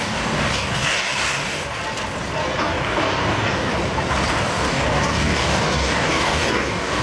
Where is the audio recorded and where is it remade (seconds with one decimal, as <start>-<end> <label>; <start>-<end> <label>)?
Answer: 0.0-1.8 remade; 1.8-2.6 recorded; 2.6-3.7 remade; 3.7-4.4 recorded; 4.4-7.0 remade